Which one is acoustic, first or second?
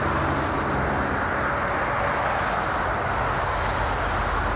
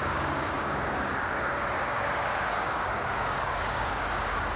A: first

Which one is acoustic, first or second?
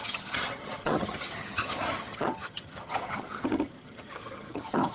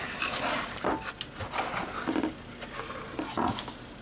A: second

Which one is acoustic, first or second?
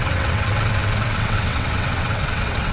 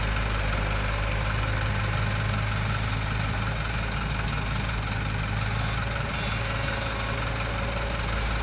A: second